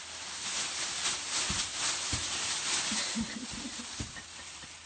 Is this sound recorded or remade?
recorded